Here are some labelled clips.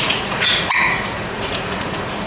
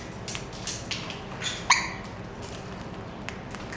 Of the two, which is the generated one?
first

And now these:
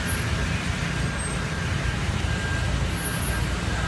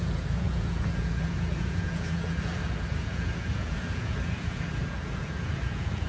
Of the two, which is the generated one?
second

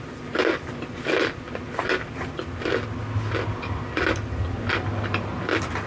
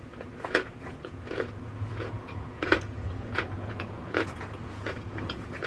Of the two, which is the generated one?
second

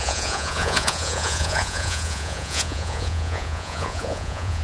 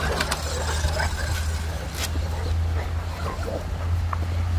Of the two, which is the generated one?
first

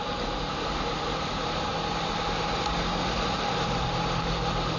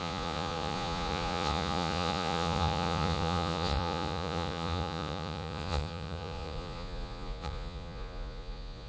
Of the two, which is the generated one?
second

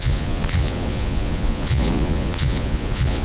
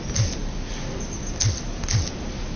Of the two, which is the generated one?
first